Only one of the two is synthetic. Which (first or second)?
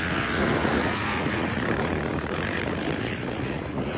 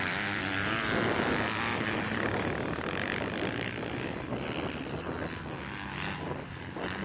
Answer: first